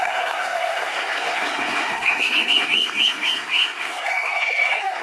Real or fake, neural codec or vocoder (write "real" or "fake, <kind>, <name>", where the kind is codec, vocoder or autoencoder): fake, codec, SNAC